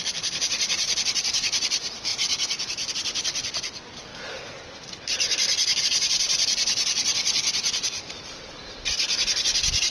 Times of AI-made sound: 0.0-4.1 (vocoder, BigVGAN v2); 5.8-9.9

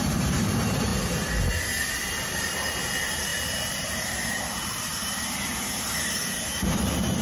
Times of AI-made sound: 0.0-0.9 (vocoder, BigVGAN v2); 2.2-7.2

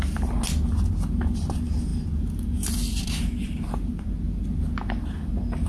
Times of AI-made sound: none

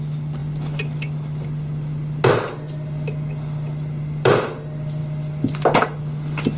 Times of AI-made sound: none

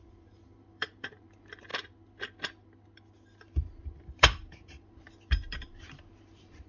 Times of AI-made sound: 0.0-1.7 (vocoder, BigVGAN v2); 3.8-6.7

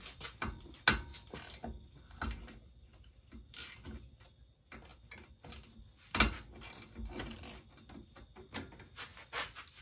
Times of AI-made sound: none